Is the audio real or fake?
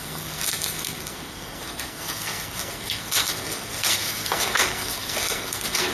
fake